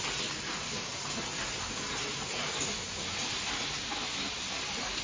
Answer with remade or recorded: recorded